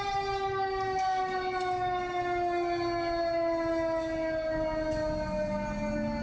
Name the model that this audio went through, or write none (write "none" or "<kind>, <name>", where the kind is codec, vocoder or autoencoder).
none